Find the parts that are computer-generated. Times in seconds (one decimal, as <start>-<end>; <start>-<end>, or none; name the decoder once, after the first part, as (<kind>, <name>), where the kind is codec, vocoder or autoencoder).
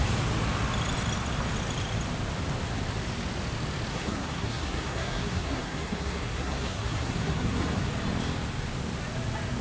3.9-7.9 (codec, SNAC)